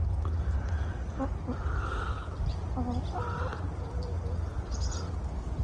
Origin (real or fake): real